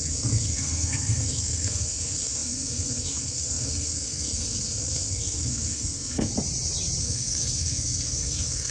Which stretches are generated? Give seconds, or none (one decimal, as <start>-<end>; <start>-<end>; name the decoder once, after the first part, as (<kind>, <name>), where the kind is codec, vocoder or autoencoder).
0.0-6.3 (codec, SNAC); 7.0-8.7